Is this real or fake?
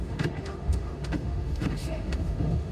fake